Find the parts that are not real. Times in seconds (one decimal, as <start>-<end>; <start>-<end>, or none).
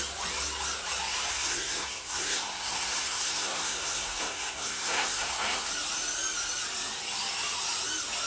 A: 1.3-5.7